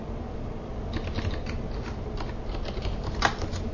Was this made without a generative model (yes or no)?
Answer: yes